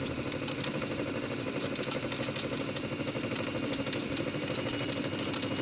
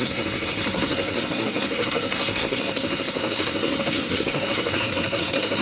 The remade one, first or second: second